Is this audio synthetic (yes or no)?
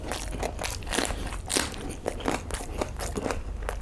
no